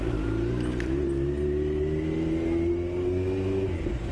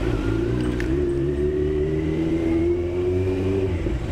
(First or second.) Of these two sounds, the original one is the first